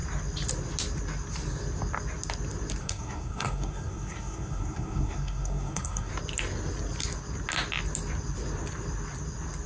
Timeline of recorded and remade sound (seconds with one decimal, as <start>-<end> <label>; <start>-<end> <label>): 0.0-2.8 recorded; 2.8-6.1 remade; 6.1-9.7 recorded